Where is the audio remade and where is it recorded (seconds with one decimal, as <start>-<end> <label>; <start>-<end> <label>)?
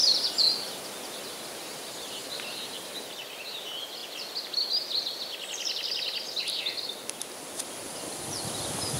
0.0-0.8 remade; 0.8-2.2 recorded; 2.2-2.9 remade; 2.9-9.0 recorded